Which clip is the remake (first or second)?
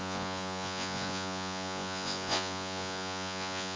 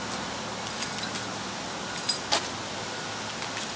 first